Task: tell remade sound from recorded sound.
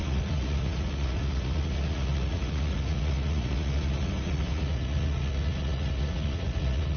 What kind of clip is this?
remade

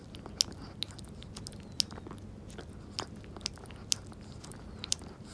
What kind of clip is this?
recorded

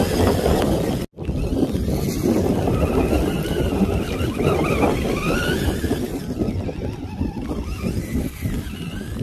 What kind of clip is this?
recorded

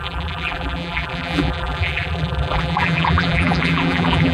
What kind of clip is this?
remade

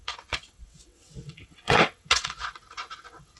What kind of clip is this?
remade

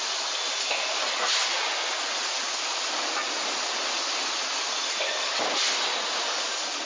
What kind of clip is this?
recorded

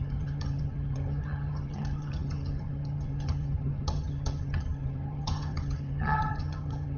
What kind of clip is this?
remade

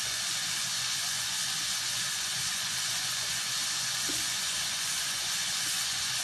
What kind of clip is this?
remade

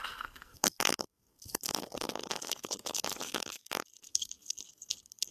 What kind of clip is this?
remade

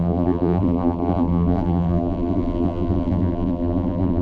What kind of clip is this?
remade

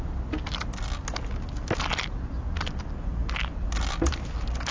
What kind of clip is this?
recorded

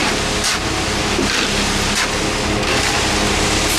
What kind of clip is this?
recorded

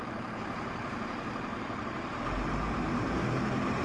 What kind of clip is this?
remade